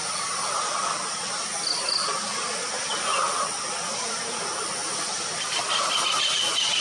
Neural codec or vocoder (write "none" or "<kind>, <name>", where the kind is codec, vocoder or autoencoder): none